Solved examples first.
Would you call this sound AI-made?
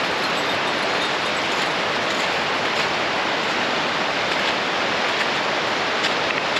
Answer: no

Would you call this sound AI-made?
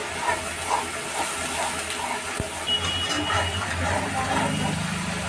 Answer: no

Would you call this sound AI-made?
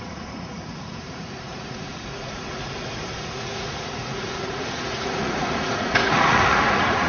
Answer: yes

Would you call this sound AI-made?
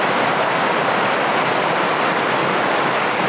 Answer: no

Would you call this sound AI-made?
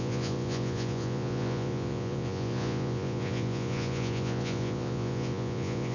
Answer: yes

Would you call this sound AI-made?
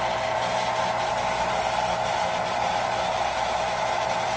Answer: no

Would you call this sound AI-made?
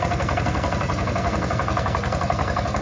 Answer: yes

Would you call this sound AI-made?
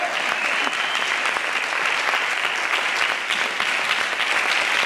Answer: no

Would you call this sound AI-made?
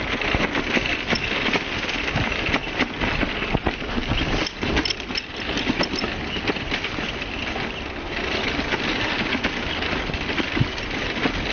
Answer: no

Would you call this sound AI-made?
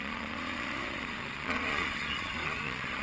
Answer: yes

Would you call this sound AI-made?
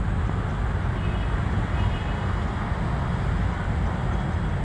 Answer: no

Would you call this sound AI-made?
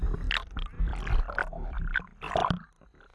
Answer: no